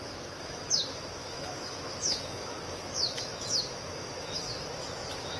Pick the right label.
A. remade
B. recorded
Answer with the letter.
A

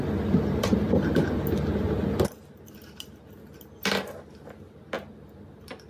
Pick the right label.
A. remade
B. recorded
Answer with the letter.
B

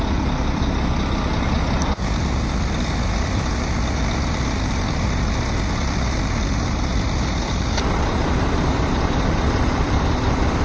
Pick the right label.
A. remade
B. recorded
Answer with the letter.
A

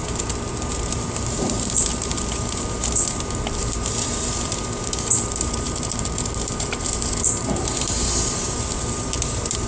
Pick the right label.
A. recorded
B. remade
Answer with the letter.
B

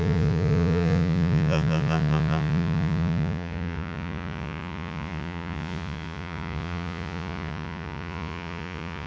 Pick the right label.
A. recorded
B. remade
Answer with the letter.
B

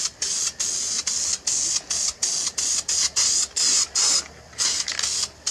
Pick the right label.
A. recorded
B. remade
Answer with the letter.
A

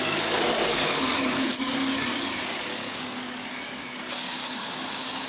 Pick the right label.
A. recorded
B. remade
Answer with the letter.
B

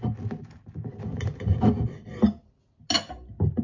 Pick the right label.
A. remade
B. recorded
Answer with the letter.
B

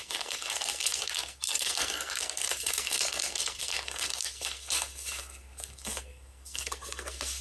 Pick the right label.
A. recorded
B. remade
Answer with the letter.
B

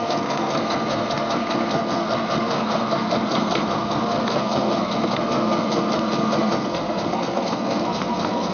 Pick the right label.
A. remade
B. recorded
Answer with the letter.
A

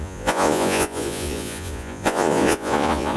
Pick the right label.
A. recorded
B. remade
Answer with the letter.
B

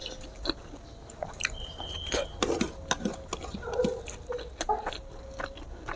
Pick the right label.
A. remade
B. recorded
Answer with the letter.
B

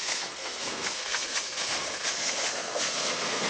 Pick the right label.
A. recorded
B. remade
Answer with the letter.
B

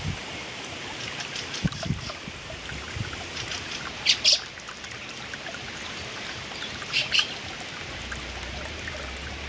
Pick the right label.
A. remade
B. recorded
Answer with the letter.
B